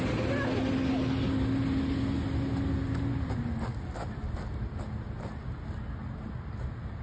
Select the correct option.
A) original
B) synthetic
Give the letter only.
A